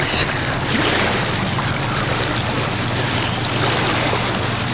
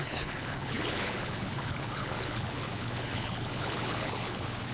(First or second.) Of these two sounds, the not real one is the second